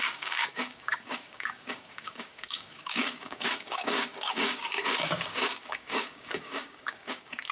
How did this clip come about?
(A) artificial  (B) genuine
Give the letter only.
A